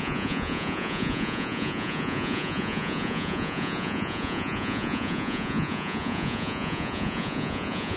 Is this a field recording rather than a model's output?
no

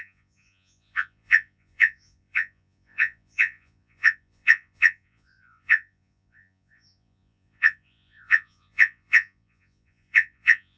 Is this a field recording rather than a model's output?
no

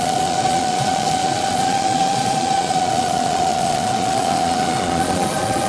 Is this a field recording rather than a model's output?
no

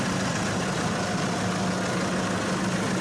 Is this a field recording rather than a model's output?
yes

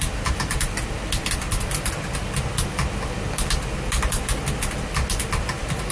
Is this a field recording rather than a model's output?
yes